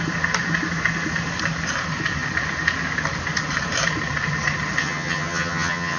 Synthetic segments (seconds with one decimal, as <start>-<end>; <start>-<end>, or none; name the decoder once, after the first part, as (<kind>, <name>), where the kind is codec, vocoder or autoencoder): 4.8-6.0 (vocoder, HiFi-GAN)